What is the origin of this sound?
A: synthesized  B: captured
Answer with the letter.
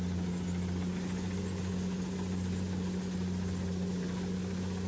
B